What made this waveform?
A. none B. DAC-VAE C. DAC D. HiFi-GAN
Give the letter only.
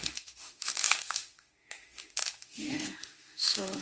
B